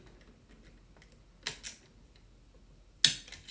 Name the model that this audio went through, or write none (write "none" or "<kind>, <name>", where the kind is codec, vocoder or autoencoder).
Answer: none